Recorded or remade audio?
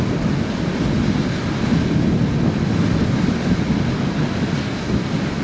recorded